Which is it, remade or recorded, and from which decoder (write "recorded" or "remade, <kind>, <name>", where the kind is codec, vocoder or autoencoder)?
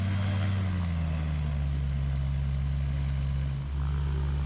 recorded